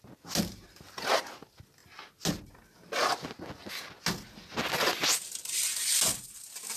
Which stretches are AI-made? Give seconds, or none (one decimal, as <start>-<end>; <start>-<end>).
none